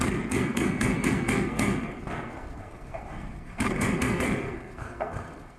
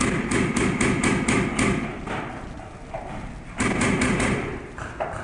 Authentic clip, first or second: second